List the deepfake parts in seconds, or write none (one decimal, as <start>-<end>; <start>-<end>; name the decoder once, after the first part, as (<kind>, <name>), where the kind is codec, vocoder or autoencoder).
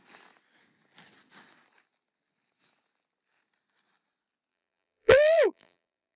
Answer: 4.5-6.2 (vocoder, BigVGAN v2)